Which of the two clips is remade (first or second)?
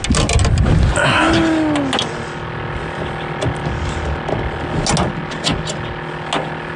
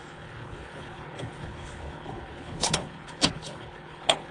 second